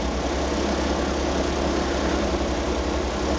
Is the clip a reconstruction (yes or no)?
no